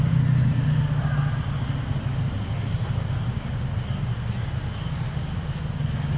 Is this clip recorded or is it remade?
recorded